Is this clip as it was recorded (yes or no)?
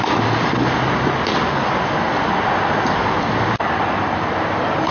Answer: yes